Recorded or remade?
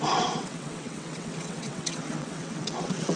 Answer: remade